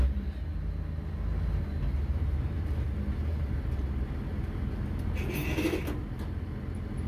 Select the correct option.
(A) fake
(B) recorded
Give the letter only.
B